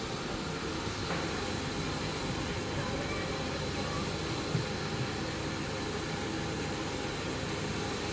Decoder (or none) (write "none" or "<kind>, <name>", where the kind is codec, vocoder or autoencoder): none